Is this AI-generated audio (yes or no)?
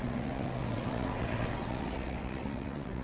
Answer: yes